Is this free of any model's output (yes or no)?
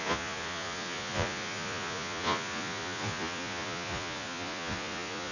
no